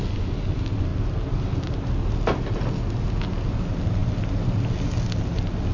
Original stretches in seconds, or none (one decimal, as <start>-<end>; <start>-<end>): 0.0-5.7